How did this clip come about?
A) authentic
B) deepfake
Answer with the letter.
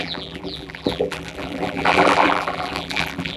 B